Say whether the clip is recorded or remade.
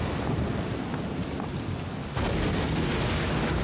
recorded